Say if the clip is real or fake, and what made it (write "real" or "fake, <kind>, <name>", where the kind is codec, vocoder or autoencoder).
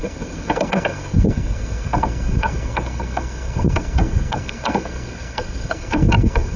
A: fake, codec, SNAC